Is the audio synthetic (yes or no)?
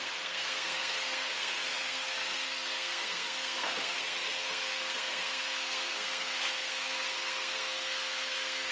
yes